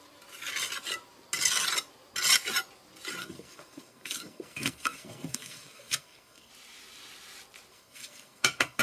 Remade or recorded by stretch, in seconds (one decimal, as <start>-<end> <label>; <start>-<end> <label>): 0.0-3.2 recorded; 3.2-6.5 remade; 6.5-7.7 recorded; 7.7-8.8 remade